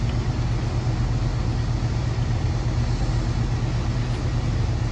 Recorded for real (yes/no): yes